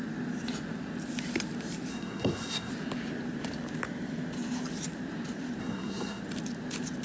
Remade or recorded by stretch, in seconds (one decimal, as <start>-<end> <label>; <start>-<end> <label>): 0.0-1.9 recorded; 1.9-2.7 remade; 2.7-5.6 recorded; 5.6-6.2 remade; 6.2-7.0 recorded